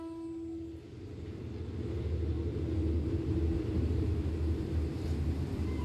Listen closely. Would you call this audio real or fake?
real